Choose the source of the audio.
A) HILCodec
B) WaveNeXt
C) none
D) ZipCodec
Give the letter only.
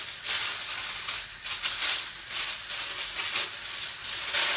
C